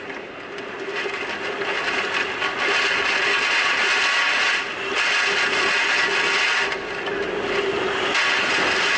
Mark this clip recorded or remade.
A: recorded